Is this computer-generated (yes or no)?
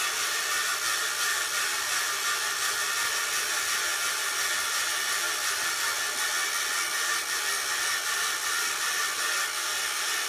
no